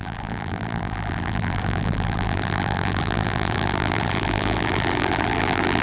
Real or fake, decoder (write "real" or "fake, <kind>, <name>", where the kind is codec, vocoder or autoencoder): fake, vocoder, BigVGAN v2